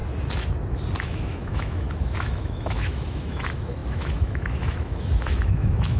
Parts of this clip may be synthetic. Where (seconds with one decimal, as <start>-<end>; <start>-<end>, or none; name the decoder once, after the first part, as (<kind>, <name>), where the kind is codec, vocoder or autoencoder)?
1.0-6.0 (autoencoder, DAC-VAE)